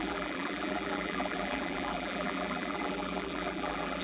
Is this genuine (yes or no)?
no